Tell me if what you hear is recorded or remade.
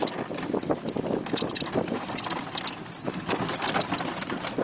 recorded